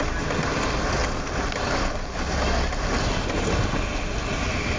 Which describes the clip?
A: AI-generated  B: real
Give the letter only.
B